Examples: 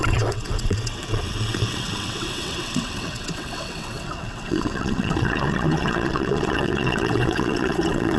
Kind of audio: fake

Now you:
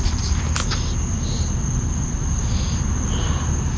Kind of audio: real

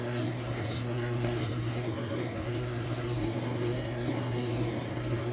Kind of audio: fake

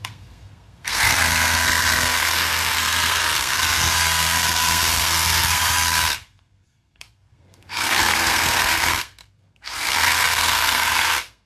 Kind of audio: fake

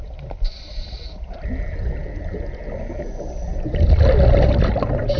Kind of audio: real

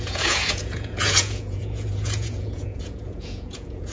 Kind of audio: fake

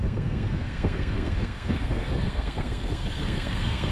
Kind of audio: fake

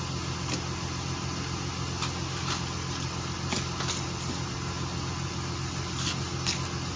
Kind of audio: real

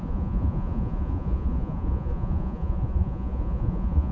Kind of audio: fake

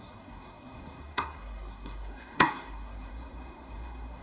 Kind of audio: fake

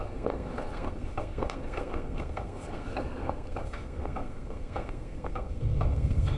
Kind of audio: fake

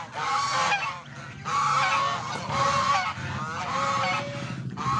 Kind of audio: real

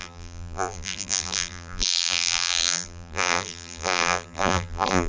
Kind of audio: fake